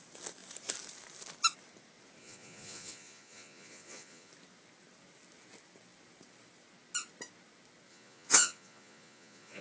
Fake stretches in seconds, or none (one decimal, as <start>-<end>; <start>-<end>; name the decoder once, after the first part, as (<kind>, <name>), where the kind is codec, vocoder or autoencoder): 2.2-4.3 (vocoder, Vocos); 7.9-9.6